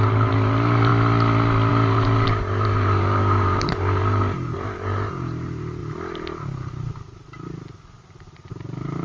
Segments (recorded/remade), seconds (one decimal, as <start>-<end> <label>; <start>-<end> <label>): 0.0-0.9 remade; 0.9-1.7 recorded; 1.7-5.8 remade; 5.8-8.5 recorded; 8.5-9.0 remade